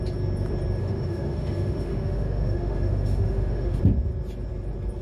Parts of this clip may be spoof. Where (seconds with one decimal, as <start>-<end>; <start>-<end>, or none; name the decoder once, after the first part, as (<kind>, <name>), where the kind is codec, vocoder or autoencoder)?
0.8-3.8 (autoencoder, DAC-VAE)